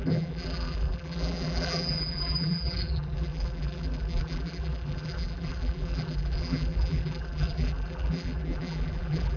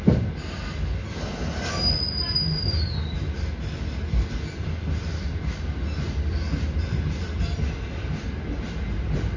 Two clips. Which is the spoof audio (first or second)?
first